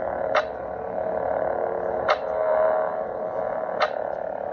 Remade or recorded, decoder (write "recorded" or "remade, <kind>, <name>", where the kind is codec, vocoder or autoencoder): remade, vocoder, BigVGAN v2